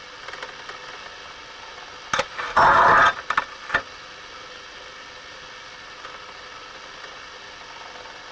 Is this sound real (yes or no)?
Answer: yes